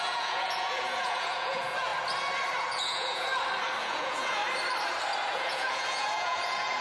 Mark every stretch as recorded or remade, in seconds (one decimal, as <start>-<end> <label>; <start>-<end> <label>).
0.0-1.9 remade; 1.9-2.6 recorded; 2.6-3.3 remade; 3.3-3.8 recorded; 3.8-4.4 remade; 4.4-5.3 recorded; 5.3-6.8 remade